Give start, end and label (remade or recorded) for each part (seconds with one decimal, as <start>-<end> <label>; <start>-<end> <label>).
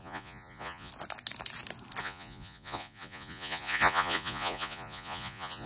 0.0-0.9 remade; 0.9-2.0 recorded; 2.0-5.7 remade